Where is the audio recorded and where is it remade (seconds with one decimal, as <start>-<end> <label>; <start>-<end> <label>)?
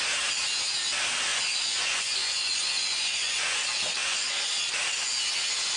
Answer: 0.0-1.3 recorded; 1.3-3.6 remade; 3.6-4.0 recorded; 4.0-4.5 remade; 4.5-5.8 recorded